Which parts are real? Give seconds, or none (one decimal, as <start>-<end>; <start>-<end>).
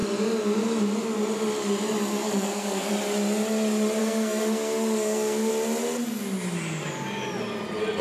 0.0-2.1; 2.9-4.0; 5.5-8.0